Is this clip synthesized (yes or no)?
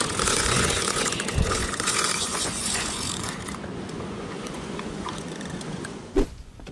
yes